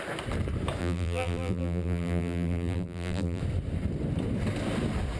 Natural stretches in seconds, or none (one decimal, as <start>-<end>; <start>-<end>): 0.0-0.8; 3.4-5.2